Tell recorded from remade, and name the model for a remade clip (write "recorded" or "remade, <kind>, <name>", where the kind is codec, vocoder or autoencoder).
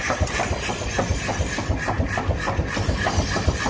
recorded